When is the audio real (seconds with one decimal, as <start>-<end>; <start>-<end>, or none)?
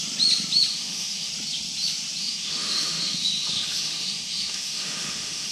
0.0-0.7; 1.3-2.2